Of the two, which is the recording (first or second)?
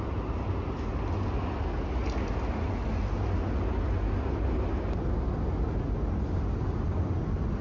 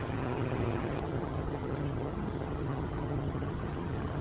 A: first